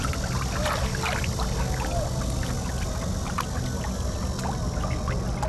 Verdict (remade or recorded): recorded